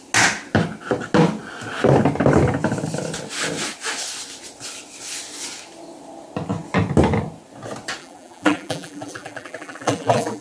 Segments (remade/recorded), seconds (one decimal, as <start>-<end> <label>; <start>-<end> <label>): 0.0-8.0 recorded; 8.0-10.4 remade